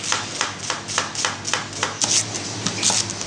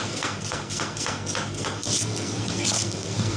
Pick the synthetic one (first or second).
second